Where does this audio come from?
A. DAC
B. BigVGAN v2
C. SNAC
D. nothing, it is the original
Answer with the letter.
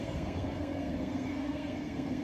C